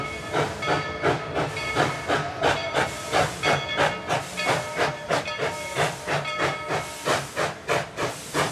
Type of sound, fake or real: real